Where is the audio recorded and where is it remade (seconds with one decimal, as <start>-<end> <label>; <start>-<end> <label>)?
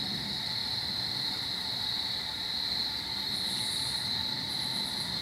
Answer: 0.0-0.6 recorded; 0.6-3.5 remade; 3.5-4.2 recorded; 4.2-5.2 remade